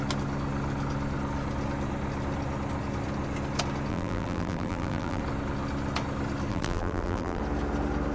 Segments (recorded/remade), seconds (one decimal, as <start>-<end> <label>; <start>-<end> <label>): 0.0-3.9 recorded; 3.9-5.2 remade; 5.2-6.5 recorded; 6.5-7.4 remade; 7.4-8.1 recorded